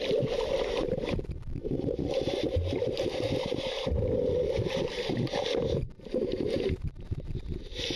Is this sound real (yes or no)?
yes